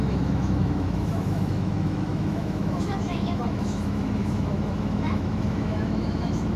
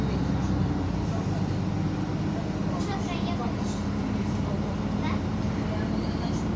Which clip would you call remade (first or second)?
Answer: first